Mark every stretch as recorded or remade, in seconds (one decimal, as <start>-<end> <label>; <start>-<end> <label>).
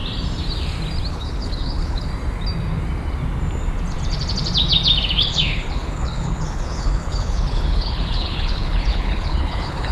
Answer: 0.0-1.1 recorded; 1.1-2.1 remade; 2.1-5.2 recorded; 5.2-9.9 remade